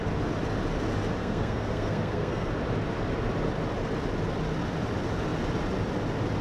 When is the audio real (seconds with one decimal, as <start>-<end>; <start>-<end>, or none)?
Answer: 0.0-1.2; 2.5-6.4